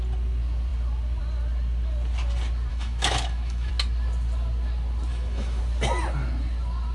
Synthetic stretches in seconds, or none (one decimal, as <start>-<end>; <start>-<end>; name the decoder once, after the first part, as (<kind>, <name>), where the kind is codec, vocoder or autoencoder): 2.7-3.7 (autoencoder, DAC-VAE); 5.1-5.6